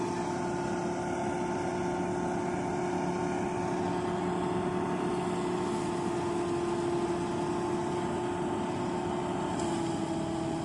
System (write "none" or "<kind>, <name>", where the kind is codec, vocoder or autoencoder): none